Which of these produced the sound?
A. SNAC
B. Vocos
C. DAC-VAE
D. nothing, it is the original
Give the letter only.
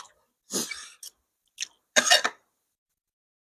D